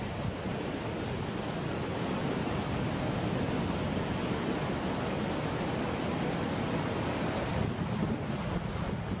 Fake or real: real